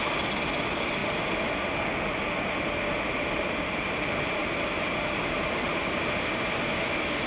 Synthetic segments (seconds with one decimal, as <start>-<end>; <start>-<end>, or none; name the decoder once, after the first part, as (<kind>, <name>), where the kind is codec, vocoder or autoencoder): 4.4-5.4 (vocoder, BigVGAN v2)